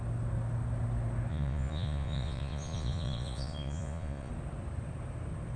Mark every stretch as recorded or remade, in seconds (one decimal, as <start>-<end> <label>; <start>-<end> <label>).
0.0-1.3 recorded; 1.3-4.3 remade; 4.3-5.6 recorded